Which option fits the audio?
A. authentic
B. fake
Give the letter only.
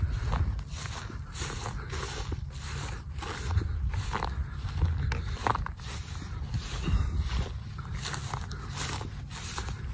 A